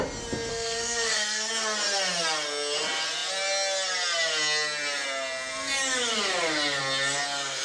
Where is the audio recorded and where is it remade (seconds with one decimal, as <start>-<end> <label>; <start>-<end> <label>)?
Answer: 0.0-0.5 recorded; 0.5-1.5 remade; 1.5-7.6 recorded